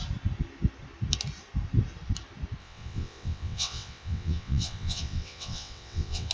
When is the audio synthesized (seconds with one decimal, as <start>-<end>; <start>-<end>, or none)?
2.6-6.3

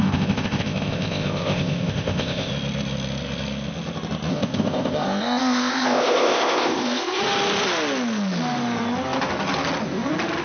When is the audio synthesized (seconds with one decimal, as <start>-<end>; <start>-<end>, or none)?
0.0-2.5; 4.3-7.2

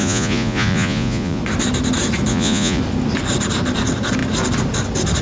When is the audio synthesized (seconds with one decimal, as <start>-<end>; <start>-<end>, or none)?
0.0-1.4; 2.3-2.8

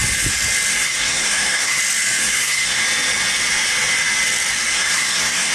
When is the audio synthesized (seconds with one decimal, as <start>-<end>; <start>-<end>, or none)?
0.7-1.8; 2.2-2.8; 4.7-5.5

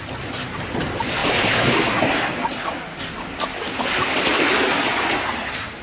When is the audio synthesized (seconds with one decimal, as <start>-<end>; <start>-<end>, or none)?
none